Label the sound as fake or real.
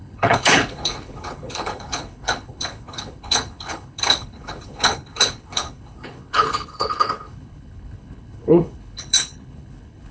fake